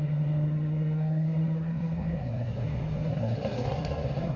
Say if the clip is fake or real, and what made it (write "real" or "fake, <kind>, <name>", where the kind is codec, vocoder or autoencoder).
fake, codec, SNAC